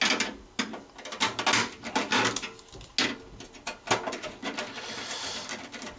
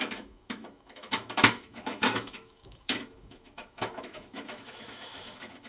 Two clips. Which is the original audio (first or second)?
first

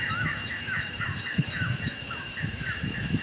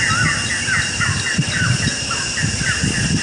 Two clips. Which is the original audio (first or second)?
second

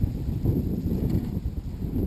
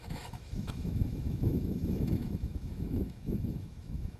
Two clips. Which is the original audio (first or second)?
first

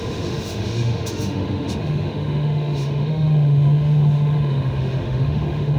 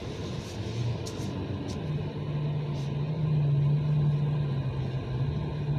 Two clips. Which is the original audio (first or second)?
second